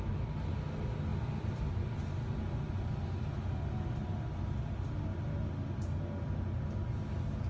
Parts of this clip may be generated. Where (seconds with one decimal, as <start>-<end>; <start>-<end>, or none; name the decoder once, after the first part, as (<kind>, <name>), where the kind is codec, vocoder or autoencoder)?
1.1-1.7 (vocoder, BigVGAN v2)